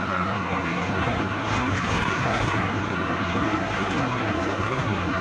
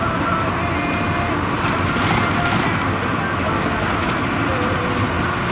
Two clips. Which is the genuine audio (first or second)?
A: second